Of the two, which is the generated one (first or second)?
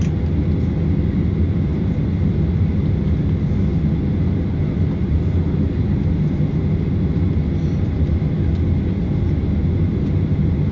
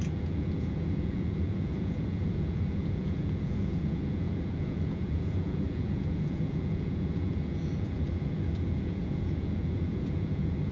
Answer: second